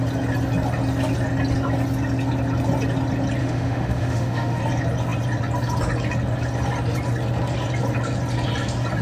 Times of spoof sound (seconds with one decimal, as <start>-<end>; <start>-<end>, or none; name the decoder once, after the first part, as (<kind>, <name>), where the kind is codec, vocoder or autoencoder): 3.4-4.6 (autoencoder, DAC-VAE)